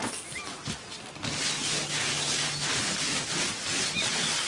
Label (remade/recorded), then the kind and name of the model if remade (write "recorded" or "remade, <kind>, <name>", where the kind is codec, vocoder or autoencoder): recorded